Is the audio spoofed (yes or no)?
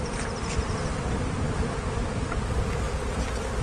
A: no